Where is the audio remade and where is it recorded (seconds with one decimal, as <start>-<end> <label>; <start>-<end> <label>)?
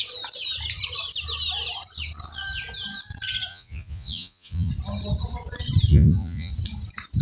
0.0-3.5 recorded; 3.5-4.7 remade; 4.7-5.9 recorded; 5.9-6.5 remade; 6.5-7.2 recorded